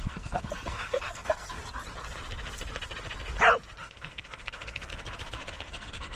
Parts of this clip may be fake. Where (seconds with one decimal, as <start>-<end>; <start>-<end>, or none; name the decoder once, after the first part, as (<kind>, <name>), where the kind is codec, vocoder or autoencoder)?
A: 0.0-1.6 (codec, SNAC); 3.8-4.9; 5.5-6.2

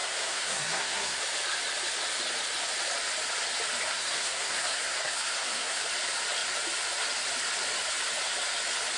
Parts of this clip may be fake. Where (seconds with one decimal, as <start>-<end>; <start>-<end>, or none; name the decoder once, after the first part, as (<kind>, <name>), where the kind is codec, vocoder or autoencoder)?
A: 0.0-1.2 (codec, SNAC); 3.9-5.8

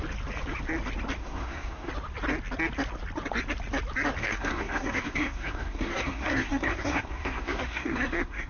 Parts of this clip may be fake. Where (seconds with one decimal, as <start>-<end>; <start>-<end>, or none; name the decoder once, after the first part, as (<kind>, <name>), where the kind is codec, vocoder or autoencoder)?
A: 1.2-1.9 (codec, SNAC); 4.2-8.5

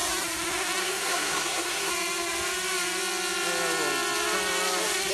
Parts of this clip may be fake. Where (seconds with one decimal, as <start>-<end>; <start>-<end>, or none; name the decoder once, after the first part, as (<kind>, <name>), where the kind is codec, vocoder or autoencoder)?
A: 0.8-1.9 (codec, SNAC)